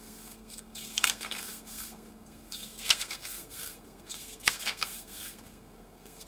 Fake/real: fake